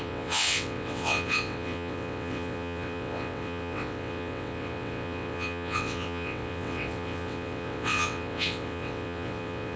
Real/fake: fake